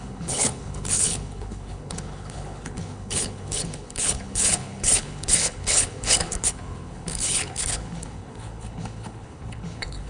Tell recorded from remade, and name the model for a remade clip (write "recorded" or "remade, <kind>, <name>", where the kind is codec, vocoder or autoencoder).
remade, codec, HILCodec